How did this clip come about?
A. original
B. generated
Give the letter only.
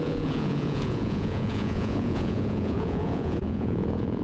B